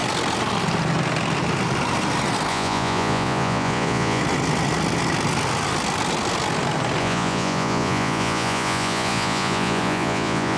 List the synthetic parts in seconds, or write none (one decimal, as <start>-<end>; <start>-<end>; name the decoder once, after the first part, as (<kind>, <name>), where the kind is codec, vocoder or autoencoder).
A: 2.5-4.2 (vocoder, Vocos); 7.0-10.6